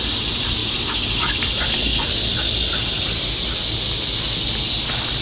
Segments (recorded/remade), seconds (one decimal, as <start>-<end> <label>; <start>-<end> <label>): 0.0-0.6 remade; 0.6-1.2 recorded; 1.2-1.9 remade; 1.9-5.2 recorded